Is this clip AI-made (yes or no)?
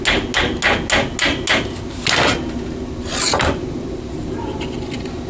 no